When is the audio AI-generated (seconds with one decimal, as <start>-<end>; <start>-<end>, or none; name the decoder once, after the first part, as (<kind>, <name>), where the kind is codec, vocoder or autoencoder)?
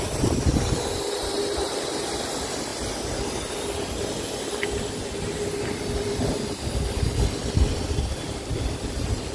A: none